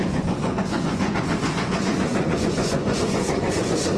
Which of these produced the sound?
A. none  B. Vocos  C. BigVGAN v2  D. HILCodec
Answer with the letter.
B